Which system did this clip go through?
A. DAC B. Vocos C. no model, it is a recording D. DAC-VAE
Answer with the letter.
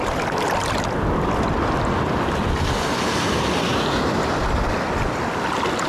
C